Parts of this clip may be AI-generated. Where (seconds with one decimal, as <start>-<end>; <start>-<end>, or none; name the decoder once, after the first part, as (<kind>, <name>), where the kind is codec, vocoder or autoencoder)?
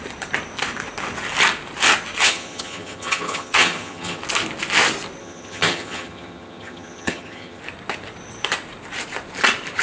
2.2-4.2 (vocoder, HiFi-GAN); 5.2-7.6